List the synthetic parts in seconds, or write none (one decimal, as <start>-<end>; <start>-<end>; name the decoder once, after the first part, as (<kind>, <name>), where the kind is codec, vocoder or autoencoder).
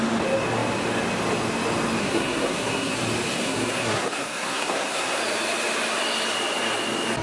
2.0-3.0 (codec, SNAC); 3.4-5.2